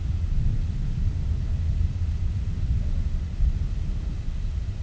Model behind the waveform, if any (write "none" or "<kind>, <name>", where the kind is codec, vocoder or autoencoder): none